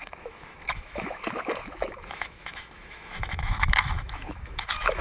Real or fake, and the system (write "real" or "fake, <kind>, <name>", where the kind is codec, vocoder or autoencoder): fake, autoencoder, DAC-VAE